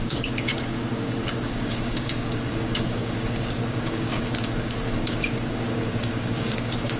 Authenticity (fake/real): fake